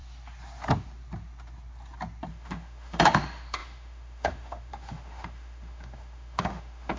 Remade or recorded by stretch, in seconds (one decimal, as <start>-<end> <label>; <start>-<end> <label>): 0.0-2.3 recorded; 2.3-7.0 remade